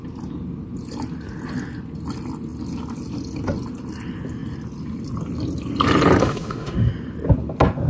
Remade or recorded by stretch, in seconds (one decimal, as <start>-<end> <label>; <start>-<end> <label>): 0.0-6.2 recorded; 6.2-6.9 remade; 6.9-7.9 recorded